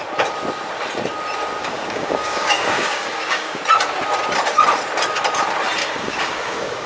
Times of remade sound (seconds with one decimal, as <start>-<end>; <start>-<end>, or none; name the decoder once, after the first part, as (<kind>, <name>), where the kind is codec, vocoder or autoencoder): 1.6-3.6 (codec, DAC); 5.8-6.9